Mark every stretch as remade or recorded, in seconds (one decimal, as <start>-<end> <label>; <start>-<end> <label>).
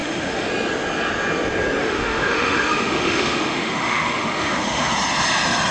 0.0-0.5 remade; 0.5-1.8 recorded; 1.8-4.9 remade; 4.9-5.7 recorded